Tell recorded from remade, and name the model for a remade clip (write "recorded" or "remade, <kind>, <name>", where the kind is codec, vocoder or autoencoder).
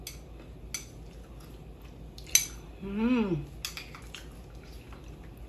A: recorded